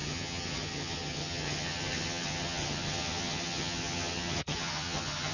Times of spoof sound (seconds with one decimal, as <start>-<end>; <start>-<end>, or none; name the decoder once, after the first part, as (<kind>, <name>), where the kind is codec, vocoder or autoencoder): 0.0-5.3 (vocoder, HiFi-GAN)